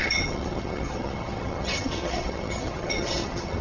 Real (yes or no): no